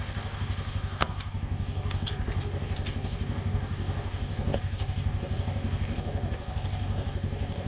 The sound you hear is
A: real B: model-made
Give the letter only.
B